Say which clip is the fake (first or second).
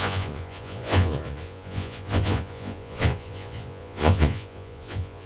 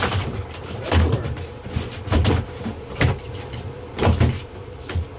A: first